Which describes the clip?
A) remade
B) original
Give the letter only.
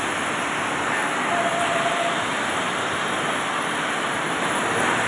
B